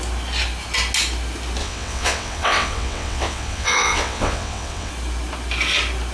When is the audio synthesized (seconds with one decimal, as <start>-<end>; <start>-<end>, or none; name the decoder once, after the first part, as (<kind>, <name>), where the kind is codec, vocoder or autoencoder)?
1.6-4.9 (vocoder, WaveNeXt)